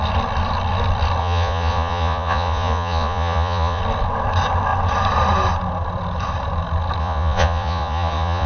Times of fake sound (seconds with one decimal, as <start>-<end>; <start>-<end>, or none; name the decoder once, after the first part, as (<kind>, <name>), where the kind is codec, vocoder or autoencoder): 1.2-3.8 (vocoder, Vocos); 7.0-8.5